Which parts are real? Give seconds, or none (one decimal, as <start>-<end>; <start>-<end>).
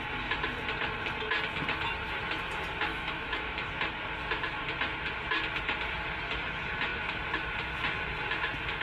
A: 0.0-2.9; 3.7-8.8